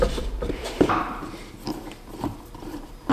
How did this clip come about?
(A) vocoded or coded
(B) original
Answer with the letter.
A